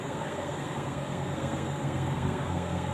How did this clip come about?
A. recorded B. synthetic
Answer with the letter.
B